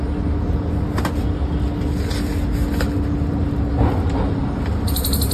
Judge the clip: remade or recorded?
recorded